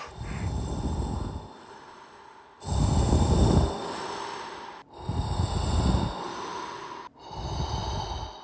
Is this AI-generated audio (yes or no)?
no